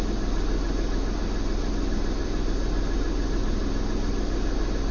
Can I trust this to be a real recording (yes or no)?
yes